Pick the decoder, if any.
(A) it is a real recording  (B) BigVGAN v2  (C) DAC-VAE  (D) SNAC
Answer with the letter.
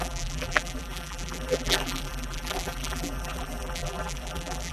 B